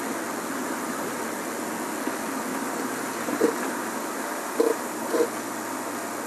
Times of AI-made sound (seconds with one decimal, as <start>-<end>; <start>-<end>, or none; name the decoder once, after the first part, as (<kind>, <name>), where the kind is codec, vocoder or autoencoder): 0.6-1.2 (vocoder, BigVGAN v2); 2.5-5.1